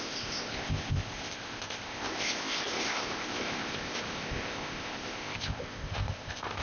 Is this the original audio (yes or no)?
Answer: no